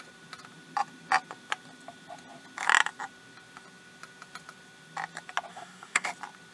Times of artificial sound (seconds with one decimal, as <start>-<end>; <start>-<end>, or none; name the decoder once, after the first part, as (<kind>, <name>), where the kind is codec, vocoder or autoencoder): 5.5-6.1 (codec, DAC)